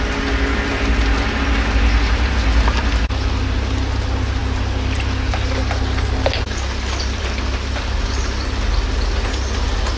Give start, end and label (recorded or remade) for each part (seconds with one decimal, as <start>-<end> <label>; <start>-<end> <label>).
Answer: 0.0-10.0 recorded